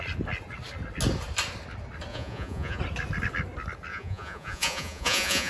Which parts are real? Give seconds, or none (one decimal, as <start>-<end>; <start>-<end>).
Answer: 0.0-2.1; 2.8-3.9